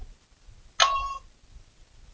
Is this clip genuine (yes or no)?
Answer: yes